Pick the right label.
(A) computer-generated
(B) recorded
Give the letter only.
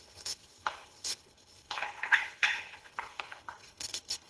A